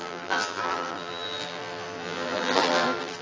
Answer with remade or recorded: remade